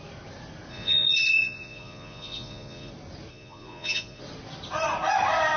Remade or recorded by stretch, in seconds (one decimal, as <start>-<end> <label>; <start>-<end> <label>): 0.0-0.7 recorded; 0.7-2.9 remade; 2.9-3.3 recorded; 3.3-4.2 remade; 4.2-5.6 recorded